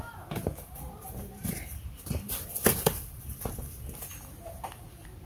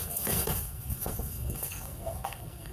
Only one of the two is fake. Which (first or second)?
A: second